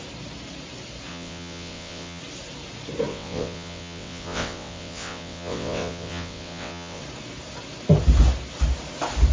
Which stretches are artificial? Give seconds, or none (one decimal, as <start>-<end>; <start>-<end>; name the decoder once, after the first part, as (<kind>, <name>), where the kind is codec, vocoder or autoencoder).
1.1-2.2 (vocoder, WaveNeXt); 3.1-7.0